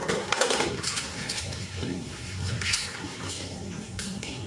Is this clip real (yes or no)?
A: no